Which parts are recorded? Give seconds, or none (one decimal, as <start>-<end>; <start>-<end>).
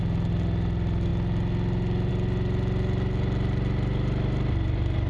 0.0-5.1